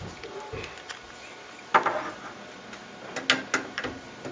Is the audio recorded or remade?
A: recorded